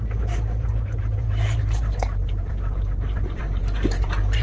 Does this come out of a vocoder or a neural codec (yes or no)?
yes